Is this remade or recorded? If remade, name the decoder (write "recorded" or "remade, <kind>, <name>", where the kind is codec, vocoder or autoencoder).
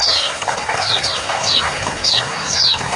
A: remade, codec, SNAC